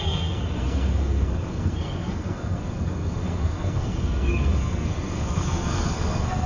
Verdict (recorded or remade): remade